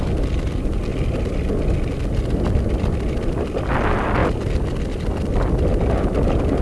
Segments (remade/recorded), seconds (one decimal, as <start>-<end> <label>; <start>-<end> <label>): 0.0-6.6 recorded